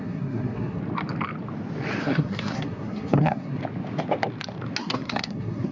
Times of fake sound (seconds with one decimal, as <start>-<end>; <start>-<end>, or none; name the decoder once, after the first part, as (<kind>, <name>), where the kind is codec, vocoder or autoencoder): 0.0-0.8 (codec, SNAC); 2.0-3.6; 4.8-5.7